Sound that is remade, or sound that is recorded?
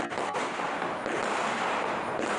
recorded